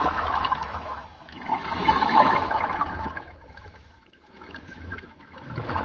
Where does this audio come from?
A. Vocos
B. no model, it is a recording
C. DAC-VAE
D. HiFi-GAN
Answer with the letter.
C